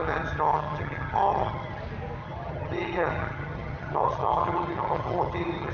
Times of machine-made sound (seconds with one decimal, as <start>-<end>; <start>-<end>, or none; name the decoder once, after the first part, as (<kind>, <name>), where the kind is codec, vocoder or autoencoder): 0.0-1.8 (vocoder, HiFi-GAN); 2.2-5.7